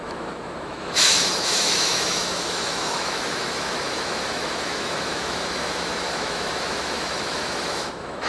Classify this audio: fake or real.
fake